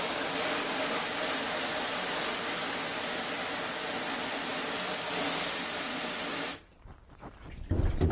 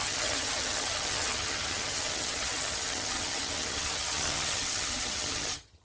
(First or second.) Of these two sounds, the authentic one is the first